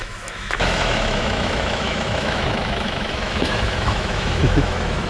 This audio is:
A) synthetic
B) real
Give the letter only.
A